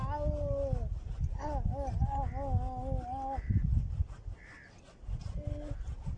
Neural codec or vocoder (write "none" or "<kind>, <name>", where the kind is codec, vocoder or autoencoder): none